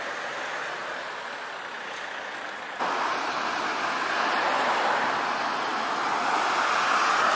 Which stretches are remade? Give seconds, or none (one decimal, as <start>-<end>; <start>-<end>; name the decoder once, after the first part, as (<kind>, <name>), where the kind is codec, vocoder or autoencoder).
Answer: none

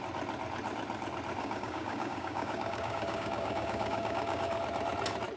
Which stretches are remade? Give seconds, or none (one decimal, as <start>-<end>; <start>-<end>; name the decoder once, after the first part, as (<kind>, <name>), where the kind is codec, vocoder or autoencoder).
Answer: 1.4-4.6 (codec, DAC)

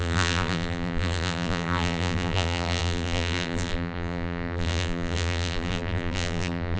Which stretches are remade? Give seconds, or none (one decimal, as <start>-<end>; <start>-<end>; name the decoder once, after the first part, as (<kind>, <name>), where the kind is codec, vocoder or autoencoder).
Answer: 0.0-6.8 (vocoder, BigVGAN v2)

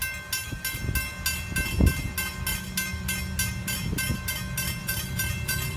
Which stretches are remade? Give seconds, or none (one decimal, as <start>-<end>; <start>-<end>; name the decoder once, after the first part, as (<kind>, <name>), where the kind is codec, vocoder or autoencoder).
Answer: 4.8-5.8 (vocoder, BigVGAN v2)

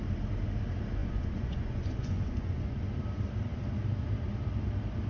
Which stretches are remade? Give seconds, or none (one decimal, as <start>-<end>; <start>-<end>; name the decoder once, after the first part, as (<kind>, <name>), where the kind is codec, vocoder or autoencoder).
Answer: 1.0-2.9 (vocoder, Vocos)

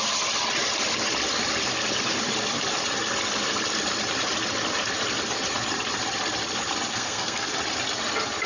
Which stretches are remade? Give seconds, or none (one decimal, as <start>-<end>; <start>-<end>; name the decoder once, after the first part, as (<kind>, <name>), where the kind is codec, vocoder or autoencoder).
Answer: 6.9-7.5 (codec, SNAC)

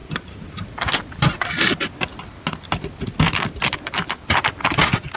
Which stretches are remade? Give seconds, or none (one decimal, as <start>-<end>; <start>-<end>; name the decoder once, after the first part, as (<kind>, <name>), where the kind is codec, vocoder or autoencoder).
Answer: 0.0-0.7 (vocoder, BigVGAN v2)